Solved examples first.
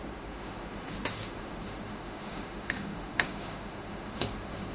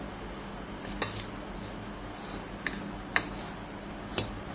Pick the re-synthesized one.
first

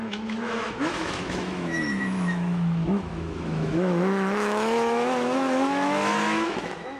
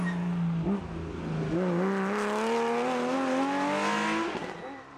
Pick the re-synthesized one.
first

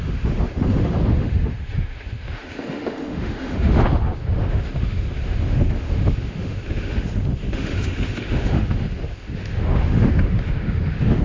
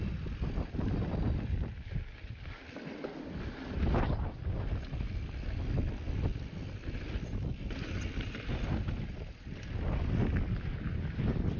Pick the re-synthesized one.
first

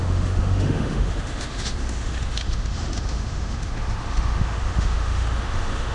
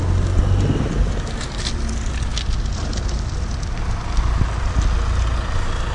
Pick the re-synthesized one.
first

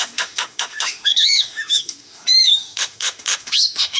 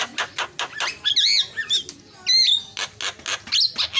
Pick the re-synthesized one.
first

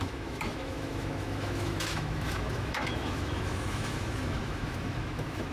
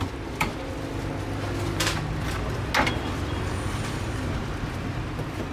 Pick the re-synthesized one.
first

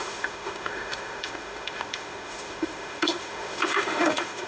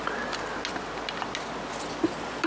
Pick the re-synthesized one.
first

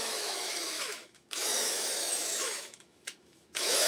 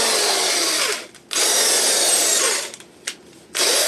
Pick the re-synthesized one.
first